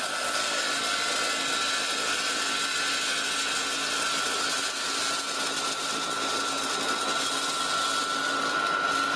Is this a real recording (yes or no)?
yes